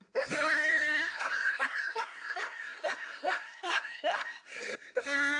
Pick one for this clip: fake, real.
fake